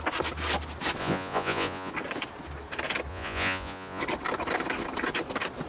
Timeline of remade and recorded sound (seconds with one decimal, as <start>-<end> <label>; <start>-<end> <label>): 0.0-1.0 recorded; 1.0-1.9 remade; 1.9-3.1 recorded; 3.1-4.0 remade; 4.0-5.7 recorded